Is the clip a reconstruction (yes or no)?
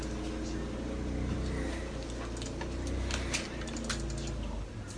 no